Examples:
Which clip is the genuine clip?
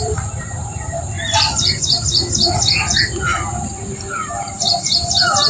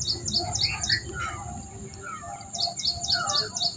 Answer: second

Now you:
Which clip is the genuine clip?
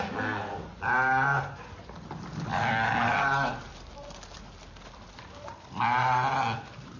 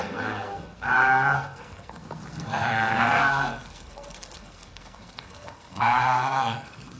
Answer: first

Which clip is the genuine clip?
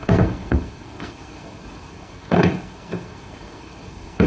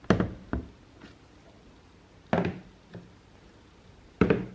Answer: second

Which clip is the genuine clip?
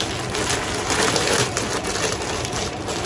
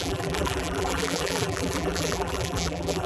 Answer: first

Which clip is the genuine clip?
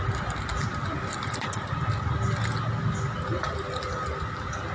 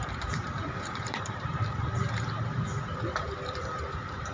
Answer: first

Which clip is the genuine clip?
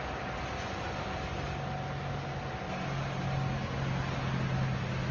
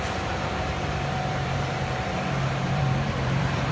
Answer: first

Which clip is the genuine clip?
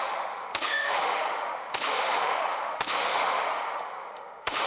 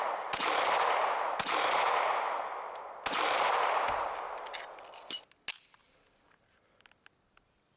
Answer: second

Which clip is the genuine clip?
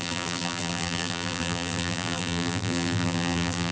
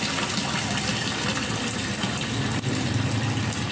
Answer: second